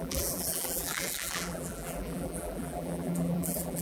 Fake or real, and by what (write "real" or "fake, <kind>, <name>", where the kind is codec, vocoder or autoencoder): fake, vocoder, BigVGAN v2